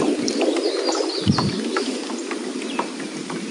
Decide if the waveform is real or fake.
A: real